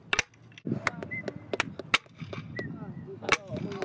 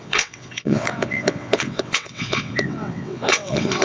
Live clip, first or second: first